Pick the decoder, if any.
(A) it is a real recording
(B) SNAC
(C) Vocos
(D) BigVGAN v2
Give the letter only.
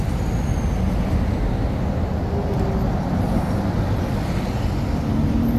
A